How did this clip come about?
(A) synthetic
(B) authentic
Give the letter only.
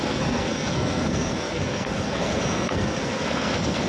A